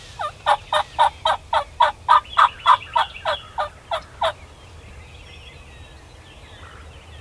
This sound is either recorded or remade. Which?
recorded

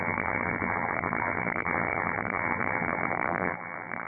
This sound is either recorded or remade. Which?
remade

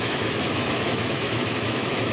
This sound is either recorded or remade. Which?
remade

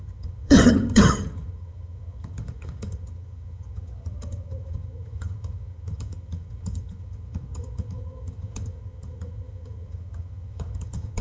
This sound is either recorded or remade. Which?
remade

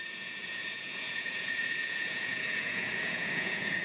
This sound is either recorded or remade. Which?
remade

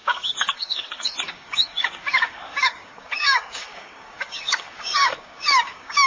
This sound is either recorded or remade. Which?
remade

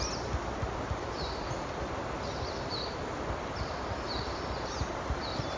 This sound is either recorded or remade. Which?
recorded